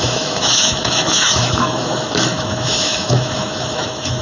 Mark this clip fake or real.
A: fake